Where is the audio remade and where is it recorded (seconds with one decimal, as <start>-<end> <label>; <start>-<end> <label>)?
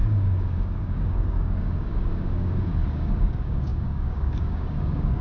0.0-5.2 remade